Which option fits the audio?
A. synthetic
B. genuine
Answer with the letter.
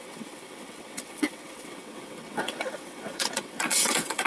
A